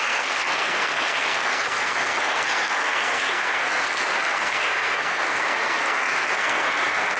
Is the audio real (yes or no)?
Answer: no